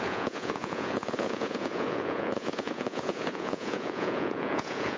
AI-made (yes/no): yes